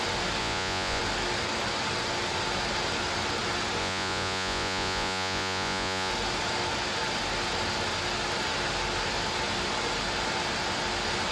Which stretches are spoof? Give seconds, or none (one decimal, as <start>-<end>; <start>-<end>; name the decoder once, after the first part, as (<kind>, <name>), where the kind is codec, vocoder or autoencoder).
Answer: 0.4-1.0 (vocoder, Vocos); 3.8-6.1